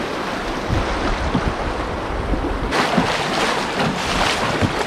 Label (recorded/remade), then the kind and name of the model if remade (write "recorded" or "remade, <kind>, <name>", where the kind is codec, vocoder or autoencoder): recorded